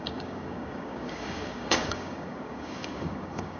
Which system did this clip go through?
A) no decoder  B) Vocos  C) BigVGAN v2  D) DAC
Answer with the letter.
D